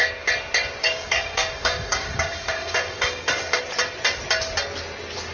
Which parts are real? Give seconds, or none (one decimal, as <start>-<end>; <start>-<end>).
0.0-0.8; 3.6-5.3